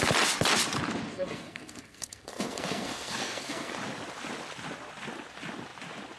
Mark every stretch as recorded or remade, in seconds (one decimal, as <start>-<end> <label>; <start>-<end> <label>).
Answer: 0.0-1.1 recorded; 1.1-3.7 remade; 3.7-6.2 recorded